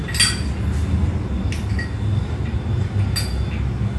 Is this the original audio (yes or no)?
yes